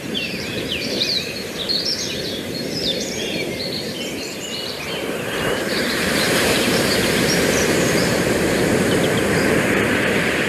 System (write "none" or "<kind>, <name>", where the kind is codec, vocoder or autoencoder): vocoder, BigVGAN v2